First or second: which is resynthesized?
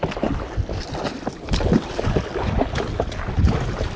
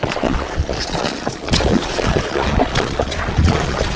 second